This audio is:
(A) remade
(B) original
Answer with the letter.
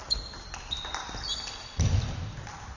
B